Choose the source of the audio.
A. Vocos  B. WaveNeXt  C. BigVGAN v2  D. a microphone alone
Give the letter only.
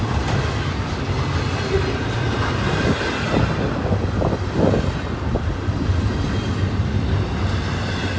D